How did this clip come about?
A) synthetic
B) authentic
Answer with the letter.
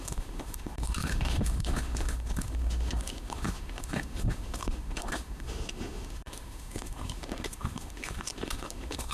A